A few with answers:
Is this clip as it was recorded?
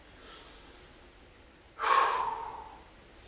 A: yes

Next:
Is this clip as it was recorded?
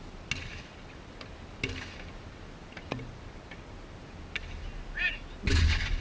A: yes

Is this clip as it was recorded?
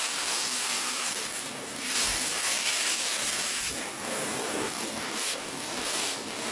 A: no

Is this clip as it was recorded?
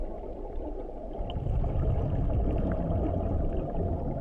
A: yes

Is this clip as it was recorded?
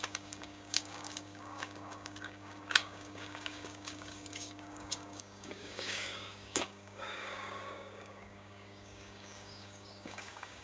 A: no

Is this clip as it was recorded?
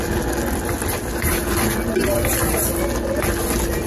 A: yes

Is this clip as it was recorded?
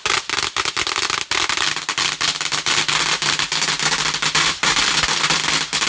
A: yes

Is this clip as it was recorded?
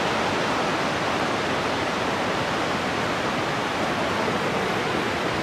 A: yes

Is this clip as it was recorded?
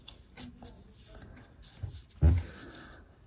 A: yes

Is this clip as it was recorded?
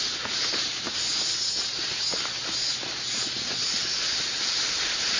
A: yes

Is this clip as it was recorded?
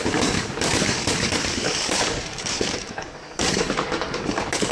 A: no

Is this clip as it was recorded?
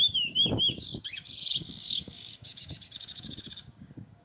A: no